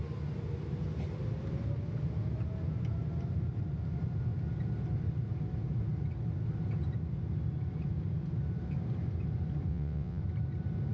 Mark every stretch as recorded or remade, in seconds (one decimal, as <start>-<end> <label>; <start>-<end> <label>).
0.0-9.7 recorded; 9.7-10.2 remade; 10.2-10.9 recorded